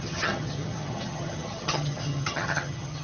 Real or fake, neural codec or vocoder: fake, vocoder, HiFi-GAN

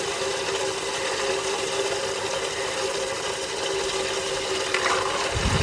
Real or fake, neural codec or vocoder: real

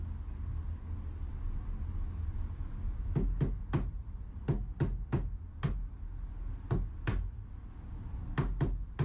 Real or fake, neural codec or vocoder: real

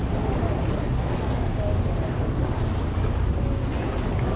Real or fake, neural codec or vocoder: real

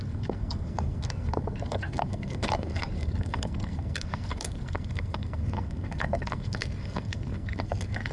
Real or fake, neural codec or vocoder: fake, codec, SNAC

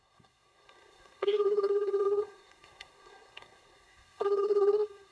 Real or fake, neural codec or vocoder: fake, codec, SNAC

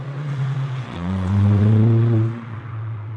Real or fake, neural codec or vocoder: fake, vocoder, WaveNeXt